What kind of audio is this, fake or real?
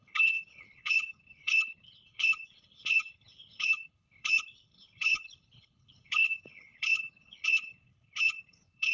fake